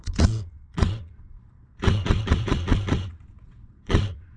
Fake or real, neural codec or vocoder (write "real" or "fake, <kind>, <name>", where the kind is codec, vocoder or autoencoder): fake, vocoder, Vocos